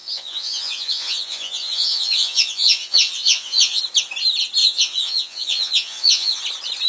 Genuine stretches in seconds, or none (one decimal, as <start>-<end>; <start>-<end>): 3.8-4.6; 6.4-6.9